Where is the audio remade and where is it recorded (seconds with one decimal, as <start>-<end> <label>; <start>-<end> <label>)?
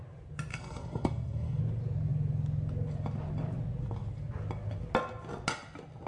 0.0-0.5 recorded; 0.5-1.6 remade; 1.6-6.1 recorded